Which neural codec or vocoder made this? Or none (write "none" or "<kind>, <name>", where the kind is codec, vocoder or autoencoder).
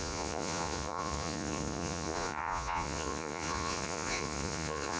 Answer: vocoder, Vocos